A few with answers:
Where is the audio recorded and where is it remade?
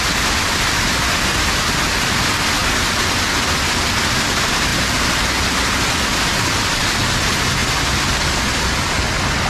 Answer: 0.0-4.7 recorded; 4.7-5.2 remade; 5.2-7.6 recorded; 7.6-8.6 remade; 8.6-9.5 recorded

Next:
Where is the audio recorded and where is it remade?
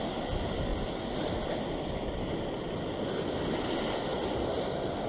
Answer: 0.0-5.1 recorded